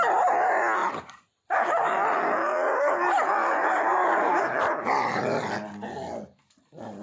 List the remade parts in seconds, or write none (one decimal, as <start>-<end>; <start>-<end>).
0.8-1.7; 3.6-5.4